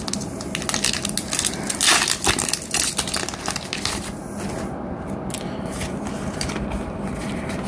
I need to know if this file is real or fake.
real